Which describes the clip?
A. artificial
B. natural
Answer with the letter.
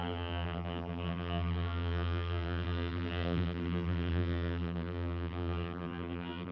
A